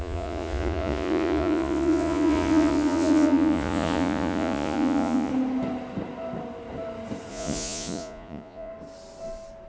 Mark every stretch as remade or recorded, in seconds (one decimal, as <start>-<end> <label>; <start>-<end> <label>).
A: 0.0-5.3 remade; 5.3-7.3 recorded; 7.3-8.7 remade; 8.7-9.7 recorded